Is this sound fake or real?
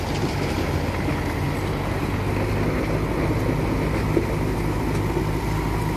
real